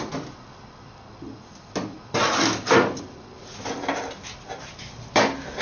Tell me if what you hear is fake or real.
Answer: real